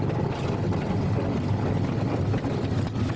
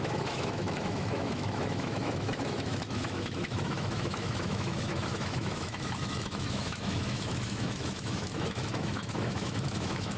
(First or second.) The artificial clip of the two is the second